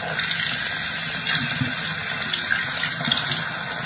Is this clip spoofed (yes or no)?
no